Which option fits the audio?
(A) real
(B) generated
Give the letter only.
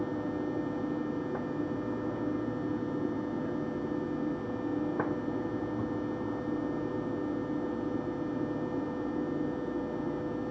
A